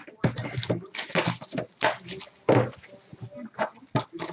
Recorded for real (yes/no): yes